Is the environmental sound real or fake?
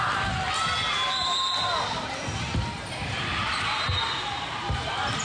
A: real